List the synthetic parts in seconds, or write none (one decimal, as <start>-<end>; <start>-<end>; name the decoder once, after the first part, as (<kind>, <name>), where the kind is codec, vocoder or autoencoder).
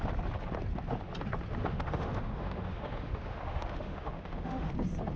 1.6-4.7 (autoencoder, DAC-VAE)